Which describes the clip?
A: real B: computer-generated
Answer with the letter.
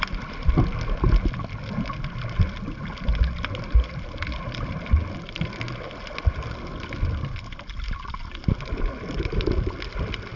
A